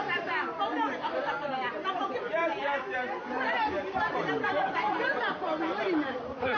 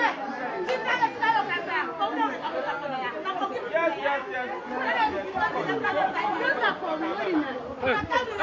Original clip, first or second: second